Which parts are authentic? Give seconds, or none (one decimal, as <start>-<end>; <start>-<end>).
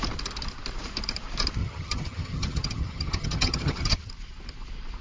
0.0-1.6; 4.1-5.0